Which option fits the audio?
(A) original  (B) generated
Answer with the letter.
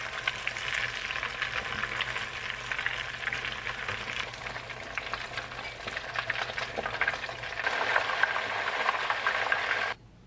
A